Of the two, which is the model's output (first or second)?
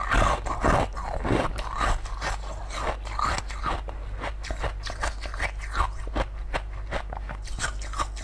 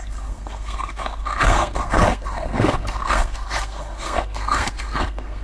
second